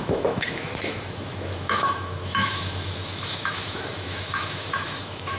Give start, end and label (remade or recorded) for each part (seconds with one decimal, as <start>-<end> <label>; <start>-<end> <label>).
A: 0.0-5.4 remade